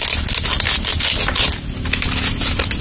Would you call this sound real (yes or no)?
yes